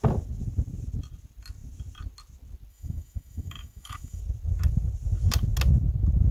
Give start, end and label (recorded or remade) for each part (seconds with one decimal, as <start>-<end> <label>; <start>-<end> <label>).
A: 0.0-2.7 recorded; 2.7-4.2 remade; 4.2-6.3 recorded